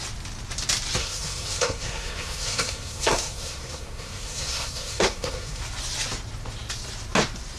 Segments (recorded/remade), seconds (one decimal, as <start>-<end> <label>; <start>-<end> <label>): 0.0-1.0 recorded; 1.0-5.6 remade; 5.6-7.6 recorded